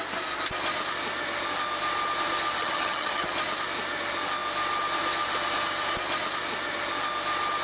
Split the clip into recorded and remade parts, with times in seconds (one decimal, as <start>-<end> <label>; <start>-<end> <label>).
0.0-2.6 recorded; 2.6-3.3 remade; 3.3-7.6 recorded